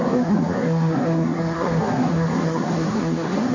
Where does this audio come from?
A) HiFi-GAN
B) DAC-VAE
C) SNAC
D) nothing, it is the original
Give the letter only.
C